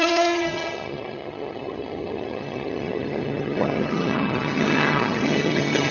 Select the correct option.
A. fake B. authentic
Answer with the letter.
A